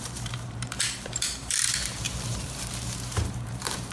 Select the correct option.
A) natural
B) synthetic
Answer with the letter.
B